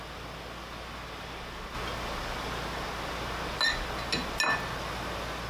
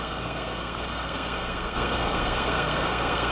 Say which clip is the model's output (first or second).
second